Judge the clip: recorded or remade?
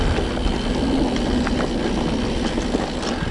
recorded